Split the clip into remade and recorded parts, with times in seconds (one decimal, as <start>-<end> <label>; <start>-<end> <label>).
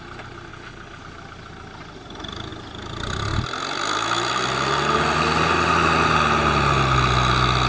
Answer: 0.0-0.5 recorded; 0.5-1.0 remade; 1.0-7.7 recorded